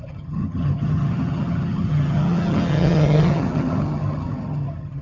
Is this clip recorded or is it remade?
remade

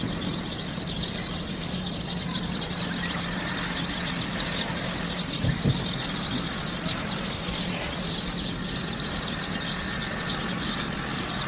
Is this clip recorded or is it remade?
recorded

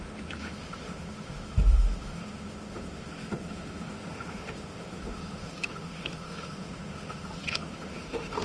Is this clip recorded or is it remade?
remade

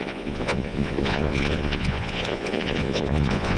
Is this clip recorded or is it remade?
remade